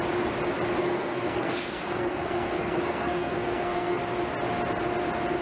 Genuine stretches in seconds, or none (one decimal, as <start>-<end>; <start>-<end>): 0.0-0.8; 4.0-5.4